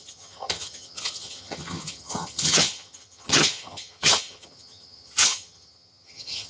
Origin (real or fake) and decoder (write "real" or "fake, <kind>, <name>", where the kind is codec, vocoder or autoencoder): fake, vocoder, HiFi-GAN